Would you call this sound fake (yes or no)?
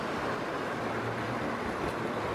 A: no